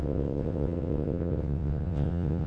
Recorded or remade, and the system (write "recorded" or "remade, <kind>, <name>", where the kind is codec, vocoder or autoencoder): remade, vocoder, WaveNeXt